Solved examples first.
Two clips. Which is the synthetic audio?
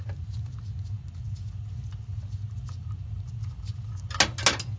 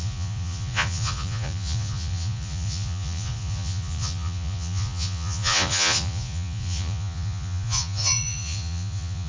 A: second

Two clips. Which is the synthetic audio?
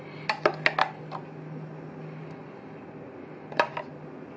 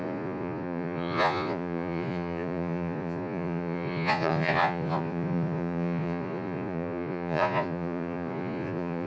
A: second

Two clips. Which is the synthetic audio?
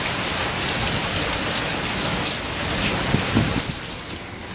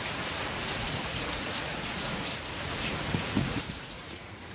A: second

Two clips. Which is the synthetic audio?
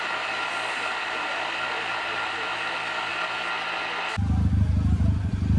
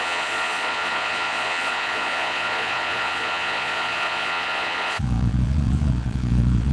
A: second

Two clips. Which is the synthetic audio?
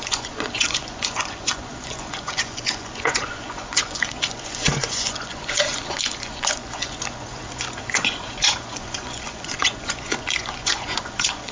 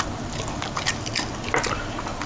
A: first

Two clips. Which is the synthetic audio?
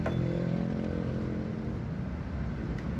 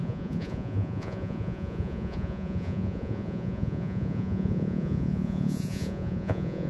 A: second